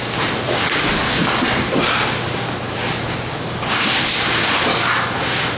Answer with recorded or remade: recorded